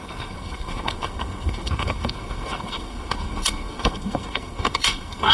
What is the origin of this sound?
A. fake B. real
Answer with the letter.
A